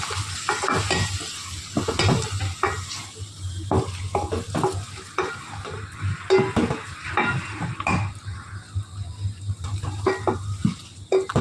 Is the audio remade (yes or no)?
no